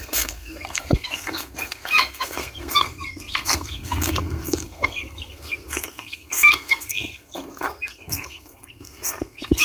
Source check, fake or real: fake